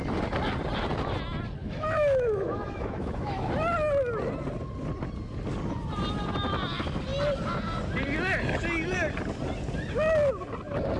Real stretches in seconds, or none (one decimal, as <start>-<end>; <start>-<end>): 0.0-1.6; 3.5-11.0

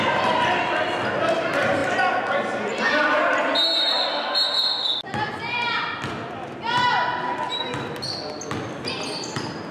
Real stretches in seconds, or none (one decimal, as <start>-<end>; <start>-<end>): 0.0-9.7

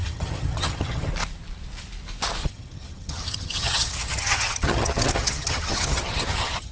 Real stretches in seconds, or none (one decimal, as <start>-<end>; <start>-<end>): 1.1-2.4

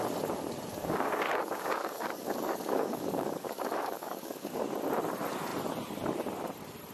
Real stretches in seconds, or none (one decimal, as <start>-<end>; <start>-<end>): 0.0-0.8; 4.7-6.9

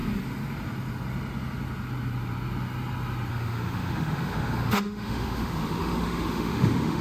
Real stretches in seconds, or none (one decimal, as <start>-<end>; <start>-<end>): 0.0-3.3